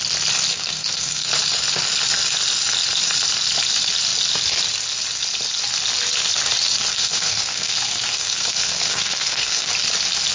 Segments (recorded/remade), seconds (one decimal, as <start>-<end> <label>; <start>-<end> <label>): 0.0-0.5 recorded; 0.5-1.3 remade; 1.3-6.9 recorded; 6.9-9.7 remade; 9.7-10.3 recorded